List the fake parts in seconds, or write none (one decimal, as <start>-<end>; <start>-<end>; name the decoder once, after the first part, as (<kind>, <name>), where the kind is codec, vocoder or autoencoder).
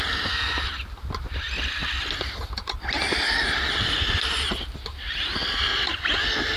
none